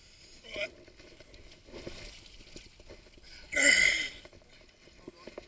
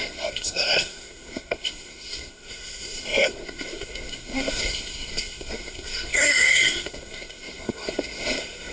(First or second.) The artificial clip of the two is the second